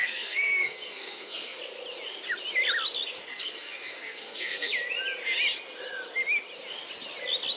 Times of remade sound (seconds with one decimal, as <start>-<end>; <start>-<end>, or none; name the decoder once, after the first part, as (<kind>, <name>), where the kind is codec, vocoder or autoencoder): 0.0-1.6 (codec, SNAC); 3.3-4.7